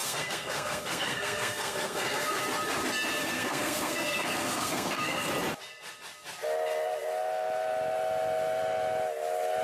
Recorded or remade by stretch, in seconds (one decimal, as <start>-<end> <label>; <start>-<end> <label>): 0.0-2.4 remade; 2.4-3.2 recorded; 3.2-5.3 remade; 5.3-9.6 recorded